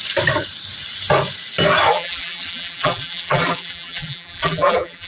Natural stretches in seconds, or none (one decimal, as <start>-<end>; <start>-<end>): 0.0-1.9

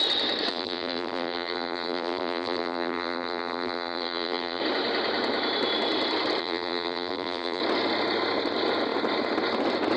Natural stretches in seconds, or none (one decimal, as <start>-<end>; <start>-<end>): 0.0-0.5; 4.6-6.4; 7.6-10.0

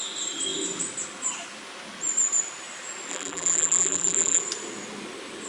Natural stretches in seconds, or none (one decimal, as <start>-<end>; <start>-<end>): 0.0-3.1; 4.4-5.5

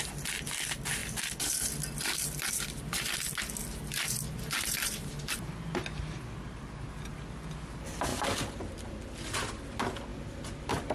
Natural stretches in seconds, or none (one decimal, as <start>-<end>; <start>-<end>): 0.0-1.0; 5.5-10.9

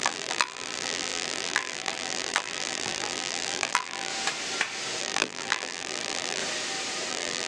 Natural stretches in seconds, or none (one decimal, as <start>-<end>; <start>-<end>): 4.1-5.0; 6.4-7.1

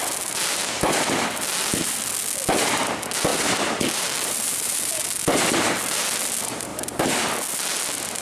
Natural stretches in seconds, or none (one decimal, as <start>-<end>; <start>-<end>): 0.0-3.3; 6.0-6.7; 7.3-8.2